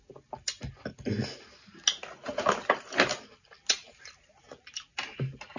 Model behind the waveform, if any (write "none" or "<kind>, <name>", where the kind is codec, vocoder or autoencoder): none